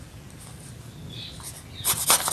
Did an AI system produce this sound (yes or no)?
no